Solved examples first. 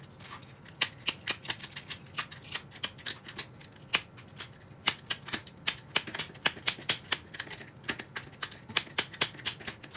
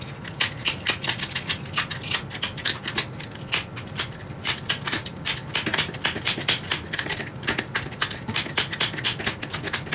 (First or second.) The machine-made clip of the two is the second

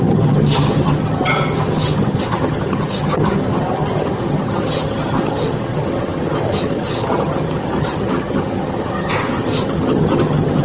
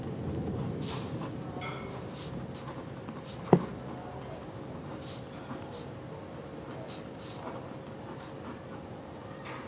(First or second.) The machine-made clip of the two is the first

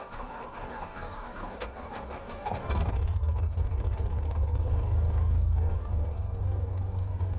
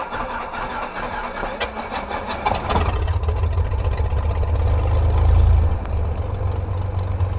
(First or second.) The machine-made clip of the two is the first